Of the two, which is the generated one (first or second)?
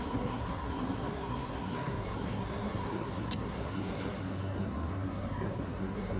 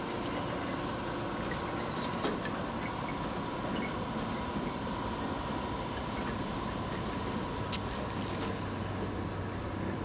first